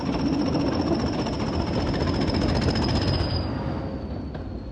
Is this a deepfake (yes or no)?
no